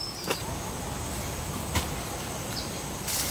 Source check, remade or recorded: recorded